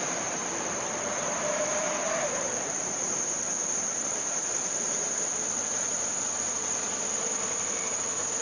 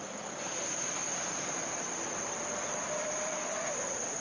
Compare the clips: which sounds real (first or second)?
second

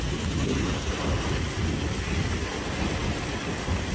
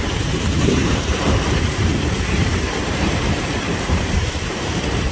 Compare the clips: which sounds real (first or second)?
first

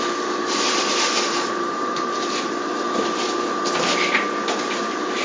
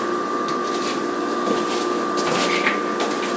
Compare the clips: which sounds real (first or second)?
second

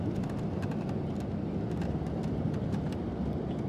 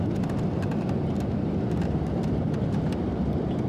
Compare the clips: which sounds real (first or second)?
first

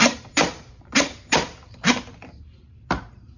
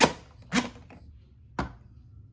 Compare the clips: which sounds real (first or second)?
second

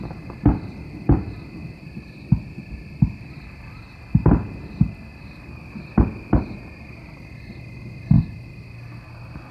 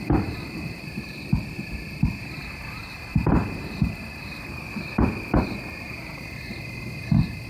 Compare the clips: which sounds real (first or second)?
first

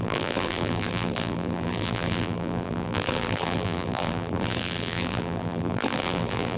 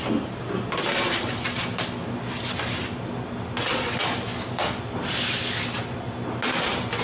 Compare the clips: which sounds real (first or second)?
second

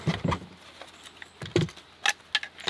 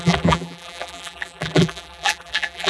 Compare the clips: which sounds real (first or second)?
first